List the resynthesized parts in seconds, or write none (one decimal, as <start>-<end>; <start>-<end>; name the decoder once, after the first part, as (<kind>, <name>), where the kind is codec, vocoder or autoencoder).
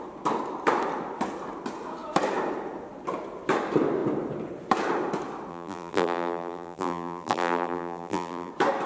5.5-8.5 (vocoder, BigVGAN v2)